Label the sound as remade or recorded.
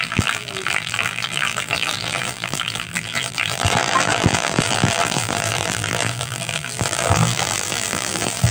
remade